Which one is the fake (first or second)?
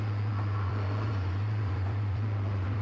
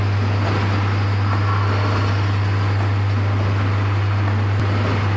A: first